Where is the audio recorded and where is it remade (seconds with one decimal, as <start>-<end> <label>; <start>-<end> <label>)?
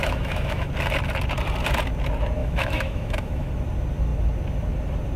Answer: 0.0-0.7 remade; 0.7-2.4 recorded; 2.4-3.5 remade; 3.5-5.2 recorded